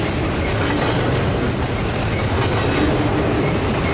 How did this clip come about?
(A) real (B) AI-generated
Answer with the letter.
A